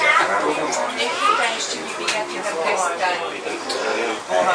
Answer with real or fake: real